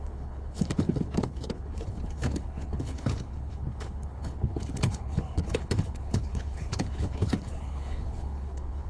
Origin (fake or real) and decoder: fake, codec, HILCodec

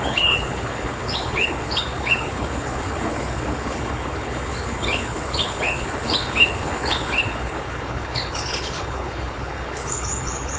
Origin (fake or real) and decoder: fake, codec, HILCodec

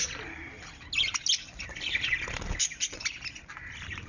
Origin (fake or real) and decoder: real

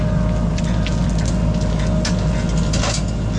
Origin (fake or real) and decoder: real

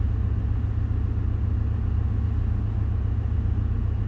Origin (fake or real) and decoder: real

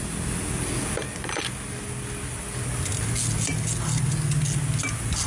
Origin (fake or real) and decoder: real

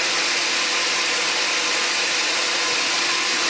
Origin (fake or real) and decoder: real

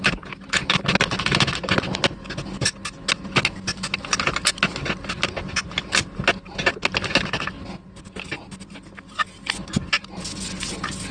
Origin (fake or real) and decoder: real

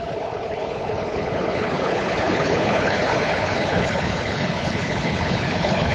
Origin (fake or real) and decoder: fake, codec, HILCodec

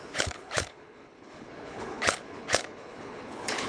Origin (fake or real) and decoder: fake, codec, HILCodec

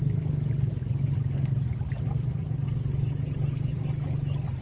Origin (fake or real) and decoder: real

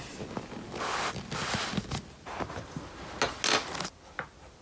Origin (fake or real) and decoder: real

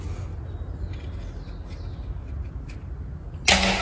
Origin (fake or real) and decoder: real